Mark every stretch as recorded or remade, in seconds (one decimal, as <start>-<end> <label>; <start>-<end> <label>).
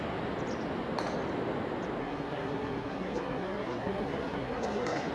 0.0-2.0 recorded; 2.0-5.1 remade